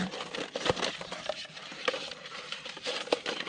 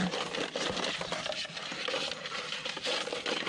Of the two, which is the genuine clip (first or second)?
second